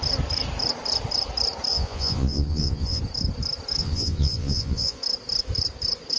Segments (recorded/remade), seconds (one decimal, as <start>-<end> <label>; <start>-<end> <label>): 0.0-1.7 recorded; 1.7-3.0 remade; 3.0-3.8 recorded; 3.8-5.0 remade; 5.0-6.2 recorded